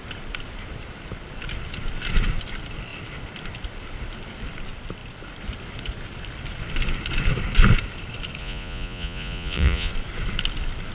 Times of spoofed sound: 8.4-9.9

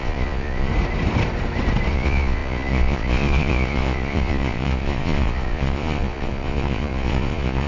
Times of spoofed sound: 0.0-0.7; 1.9-7.7

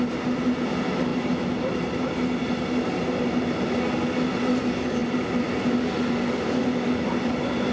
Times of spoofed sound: none

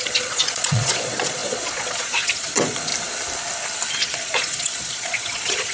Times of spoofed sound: 0.0-2.9; 3.9-5.7